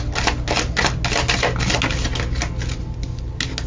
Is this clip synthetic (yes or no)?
no